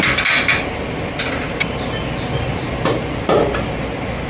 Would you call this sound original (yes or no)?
yes